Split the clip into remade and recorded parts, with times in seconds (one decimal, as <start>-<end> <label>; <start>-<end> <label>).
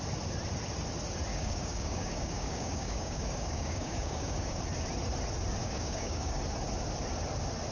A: 0.0-1.3 recorded; 1.3-4.6 remade; 4.6-5.6 recorded; 5.6-6.4 remade; 6.4-7.7 recorded